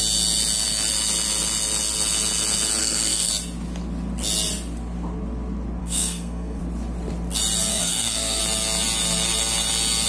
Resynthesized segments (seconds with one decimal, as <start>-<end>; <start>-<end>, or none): 2.8-3.3; 5.8-6.6; 7.7-8.4

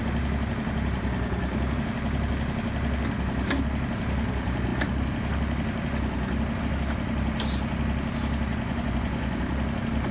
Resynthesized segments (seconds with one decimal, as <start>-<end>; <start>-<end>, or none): 8.5-9.4